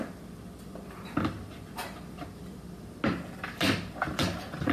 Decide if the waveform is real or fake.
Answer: real